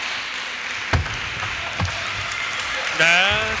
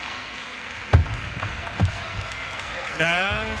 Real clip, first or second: first